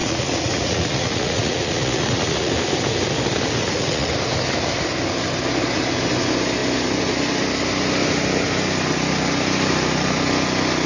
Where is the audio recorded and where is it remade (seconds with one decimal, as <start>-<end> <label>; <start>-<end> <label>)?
0.0-2.5 remade; 2.5-3.6 recorded; 3.6-4.1 remade; 4.1-10.9 recorded